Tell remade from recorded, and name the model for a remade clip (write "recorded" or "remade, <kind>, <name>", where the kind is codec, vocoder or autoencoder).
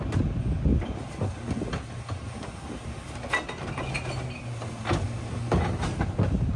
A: recorded